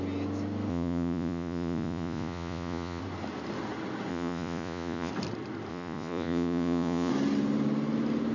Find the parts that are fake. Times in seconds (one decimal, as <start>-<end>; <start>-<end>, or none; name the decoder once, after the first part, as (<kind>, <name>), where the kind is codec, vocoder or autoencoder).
0.7-3.0 (vocoder, Vocos); 4.1-5.1; 5.7-7.1